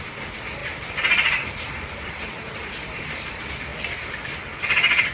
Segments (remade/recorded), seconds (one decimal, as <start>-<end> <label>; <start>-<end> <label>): 0.0-0.6 recorded; 0.6-3.3 remade; 3.3-3.7 recorded; 3.7-4.2 remade; 4.2-5.1 recorded